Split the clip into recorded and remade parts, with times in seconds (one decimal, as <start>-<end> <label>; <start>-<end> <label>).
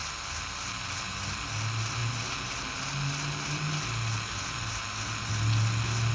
0.0-6.1 recorded